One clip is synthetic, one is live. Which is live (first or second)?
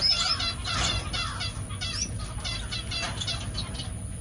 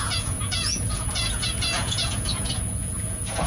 first